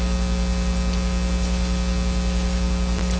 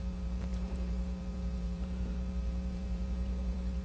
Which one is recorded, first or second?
first